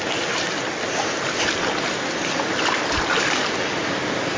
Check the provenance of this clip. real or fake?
real